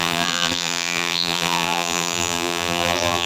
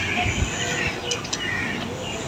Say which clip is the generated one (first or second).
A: first